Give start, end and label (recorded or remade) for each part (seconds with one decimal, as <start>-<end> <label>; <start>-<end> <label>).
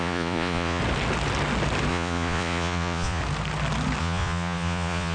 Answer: 0.0-0.8 remade; 0.8-1.9 recorded; 1.9-3.2 remade; 3.2-4.0 recorded; 4.0-5.1 remade